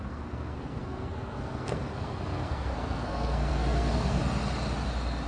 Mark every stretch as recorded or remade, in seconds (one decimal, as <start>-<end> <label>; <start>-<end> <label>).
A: 0.0-4.2 remade; 4.2-5.3 recorded